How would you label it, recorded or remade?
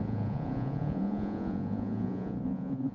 remade